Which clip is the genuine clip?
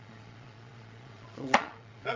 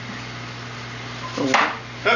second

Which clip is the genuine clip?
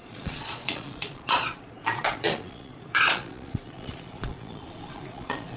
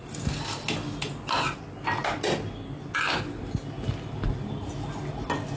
second